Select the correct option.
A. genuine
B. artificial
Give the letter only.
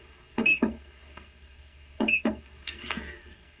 B